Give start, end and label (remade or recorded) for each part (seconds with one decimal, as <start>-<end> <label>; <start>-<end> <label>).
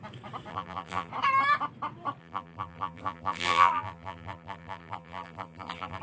0.0-0.5 recorded; 0.5-1.1 remade; 1.1-2.2 recorded; 2.2-6.0 remade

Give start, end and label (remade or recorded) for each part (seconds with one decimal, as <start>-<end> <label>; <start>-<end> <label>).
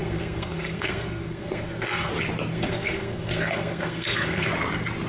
0.0-2.1 remade; 2.1-2.5 recorded; 2.5-4.5 remade; 4.5-5.1 recorded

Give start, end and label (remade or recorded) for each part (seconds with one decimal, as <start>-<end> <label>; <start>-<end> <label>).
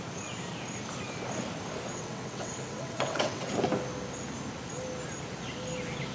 0.0-1.9 recorded; 1.9-3.5 remade; 3.5-6.1 recorded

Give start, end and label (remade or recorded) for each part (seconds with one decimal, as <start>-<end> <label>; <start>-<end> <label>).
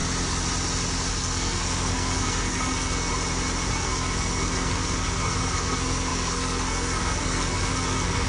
0.0-1.1 recorded; 1.1-3.1 remade; 3.1-3.7 recorded; 3.7-8.3 remade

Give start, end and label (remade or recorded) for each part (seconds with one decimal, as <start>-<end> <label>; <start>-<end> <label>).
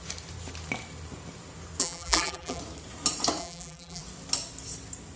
0.0-1.8 recorded; 1.8-2.6 remade; 2.6-3.4 recorded; 3.4-4.0 remade; 4.0-5.2 recorded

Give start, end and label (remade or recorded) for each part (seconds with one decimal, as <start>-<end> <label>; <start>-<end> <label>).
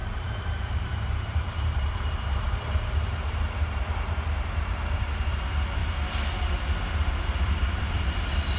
0.0-5.8 remade; 5.8-6.9 recorded; 6.9-8.6 remade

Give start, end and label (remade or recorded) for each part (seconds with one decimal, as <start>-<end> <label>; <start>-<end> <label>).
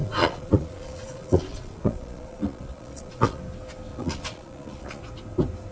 0.0-3.4 remade; 3.4-3.9 recorded; 3.9-5.0 remade; 5.0-5.7 recorded